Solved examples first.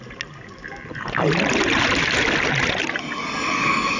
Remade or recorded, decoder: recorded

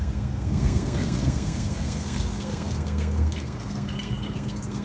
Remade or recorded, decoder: remade, codec, SNAC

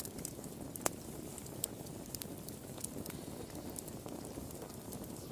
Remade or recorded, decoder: recorded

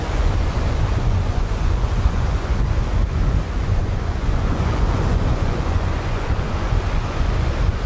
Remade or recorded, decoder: remade, vocoder, Vocos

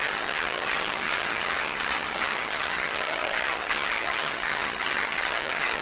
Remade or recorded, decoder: remade, vocoder, HiFi-GAN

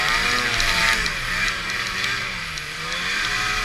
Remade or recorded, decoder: remade, vocoder, BigVGAN v2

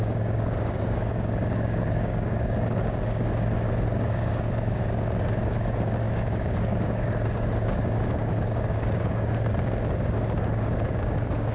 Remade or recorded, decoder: remade, codec, DAC